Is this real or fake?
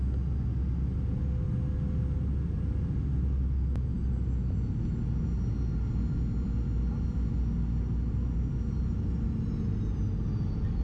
real